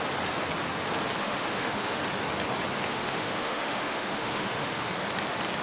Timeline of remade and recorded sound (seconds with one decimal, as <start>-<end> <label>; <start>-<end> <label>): 0.0-1.2 recorded; 1.2-2.0 remade; 2.0-2.9 recorded; 2.9-4.9 remade; 4.9-5.6 recorded